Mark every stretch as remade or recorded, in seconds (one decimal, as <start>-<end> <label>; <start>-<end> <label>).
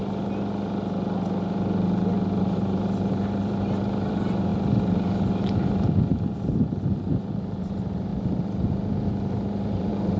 0.0-2.4 recorded; 2.4-4.5 remade; 4.5-7.6 recorded; 7.6-8.1 remade; 8.1-8.7 recorded; 8.7-10.2 remade